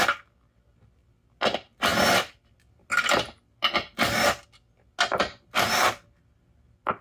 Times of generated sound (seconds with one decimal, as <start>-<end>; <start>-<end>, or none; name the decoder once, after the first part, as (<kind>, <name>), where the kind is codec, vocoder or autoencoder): none

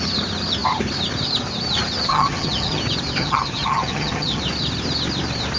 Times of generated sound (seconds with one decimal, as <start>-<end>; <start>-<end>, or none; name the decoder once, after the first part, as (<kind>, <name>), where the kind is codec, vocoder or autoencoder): 2.1-2.8 (vocoder, HiFi-GAN); 3.2-4.4

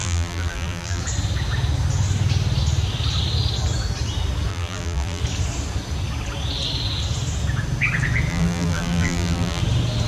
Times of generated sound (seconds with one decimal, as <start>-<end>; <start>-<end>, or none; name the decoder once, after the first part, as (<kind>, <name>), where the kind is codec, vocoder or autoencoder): 0.0-1.0 (vocoder, BigVGAN v2); 4.5-5.2; 8.3-9.6

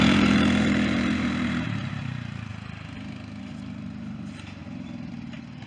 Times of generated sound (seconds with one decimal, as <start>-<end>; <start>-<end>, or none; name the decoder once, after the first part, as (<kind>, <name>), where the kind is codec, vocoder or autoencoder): 0.0-2.5 (vocoder, BigVGAN v2); 3.4-4.6; 5.1-5.7

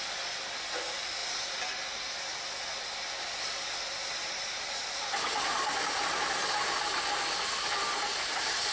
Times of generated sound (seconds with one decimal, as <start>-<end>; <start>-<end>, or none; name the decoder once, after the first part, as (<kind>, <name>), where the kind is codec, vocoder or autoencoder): none

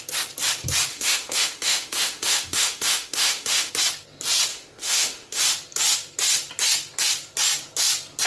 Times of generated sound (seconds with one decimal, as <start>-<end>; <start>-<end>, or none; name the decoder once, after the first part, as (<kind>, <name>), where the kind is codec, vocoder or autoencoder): 0.9-3.7 (autoencoder, DAC-VAE); 4.5-5.4

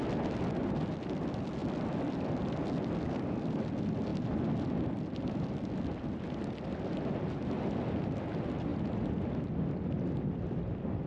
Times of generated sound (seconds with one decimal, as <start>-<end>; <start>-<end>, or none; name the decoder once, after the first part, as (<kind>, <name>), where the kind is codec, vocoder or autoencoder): none

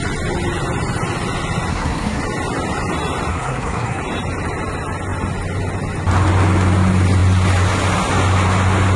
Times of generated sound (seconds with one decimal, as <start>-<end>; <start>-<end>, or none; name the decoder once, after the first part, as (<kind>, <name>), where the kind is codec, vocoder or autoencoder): 1.7-2.2 (codec, SNAC); 3.3-4.0